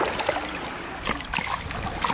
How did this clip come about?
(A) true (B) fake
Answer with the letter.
A